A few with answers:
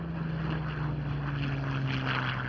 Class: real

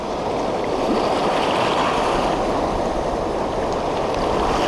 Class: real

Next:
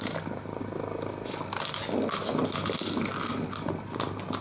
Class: real